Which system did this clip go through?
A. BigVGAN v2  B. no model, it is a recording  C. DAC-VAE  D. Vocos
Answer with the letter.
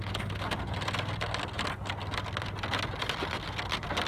B